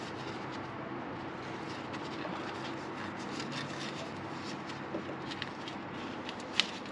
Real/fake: real